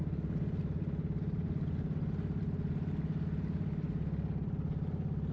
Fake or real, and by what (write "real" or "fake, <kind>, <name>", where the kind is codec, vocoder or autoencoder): real